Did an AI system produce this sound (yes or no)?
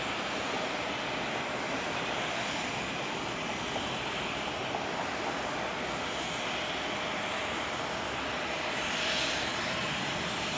no